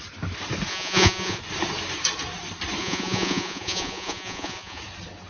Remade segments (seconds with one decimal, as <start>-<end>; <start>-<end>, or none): 0.7-1.4; 2.8-4.8